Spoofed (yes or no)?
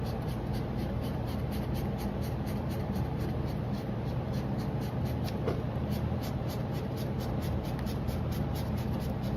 yes